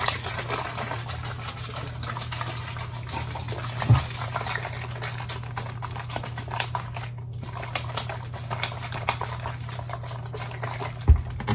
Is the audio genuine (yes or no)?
yes